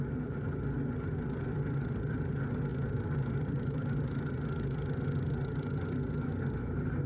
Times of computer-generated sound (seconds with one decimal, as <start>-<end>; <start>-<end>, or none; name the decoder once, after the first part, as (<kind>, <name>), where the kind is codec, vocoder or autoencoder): none